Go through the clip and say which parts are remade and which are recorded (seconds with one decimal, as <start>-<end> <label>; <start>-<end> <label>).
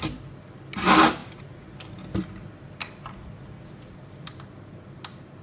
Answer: 0.0-1.2 recorded; 1.2-4.4 remade; 4.4-5.4 recorded